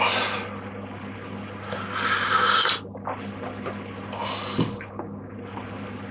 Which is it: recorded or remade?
recorded